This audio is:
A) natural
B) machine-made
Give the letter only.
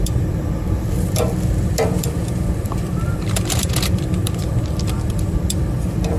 B